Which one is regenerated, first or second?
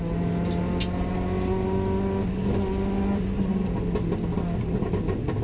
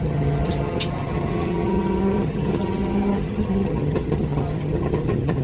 second